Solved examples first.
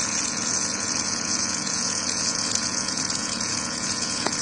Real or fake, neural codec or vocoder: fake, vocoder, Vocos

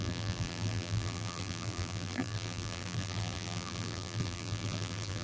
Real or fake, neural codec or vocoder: fake, vocoder, BigVGAN v2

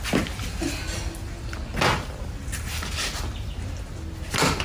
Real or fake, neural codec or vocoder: real